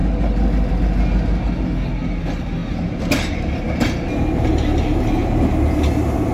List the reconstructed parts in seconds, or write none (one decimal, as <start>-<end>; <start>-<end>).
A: none